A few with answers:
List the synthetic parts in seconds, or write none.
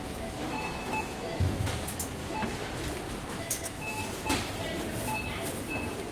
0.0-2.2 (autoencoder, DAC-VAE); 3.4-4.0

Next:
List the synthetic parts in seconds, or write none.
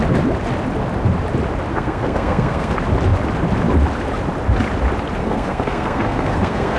1.7-2.7 (codec, SNAC); 5.2-6.8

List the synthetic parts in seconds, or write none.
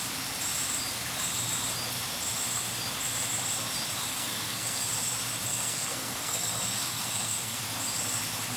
4.1-4.9 (codec, SNAC); 5.5-7.6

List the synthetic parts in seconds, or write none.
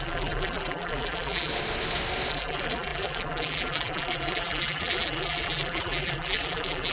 0.0-1.5 (vocoder, BigVGAN v2); 2.3-6.9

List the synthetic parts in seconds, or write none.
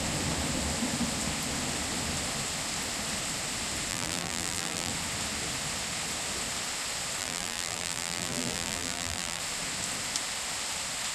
3.9-4.9 (vocoder, BigVGAN v2); 7.2-9.4